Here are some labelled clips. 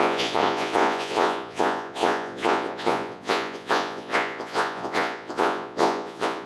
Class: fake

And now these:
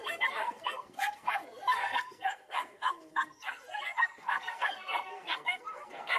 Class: fake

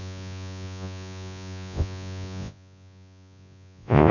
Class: fake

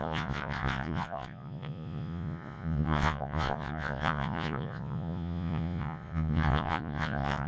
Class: fake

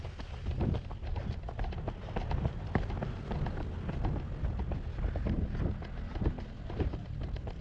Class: real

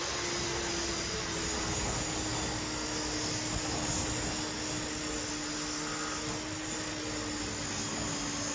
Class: real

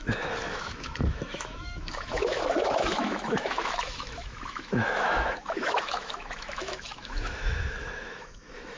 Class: fake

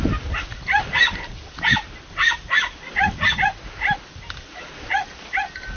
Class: real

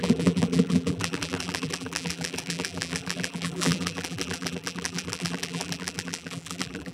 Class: fake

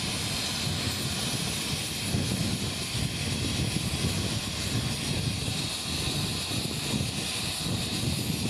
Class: real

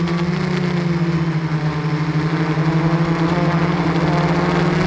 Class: real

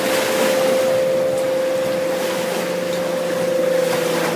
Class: real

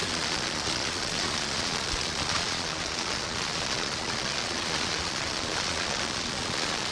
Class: fake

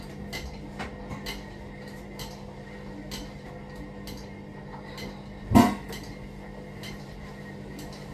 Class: real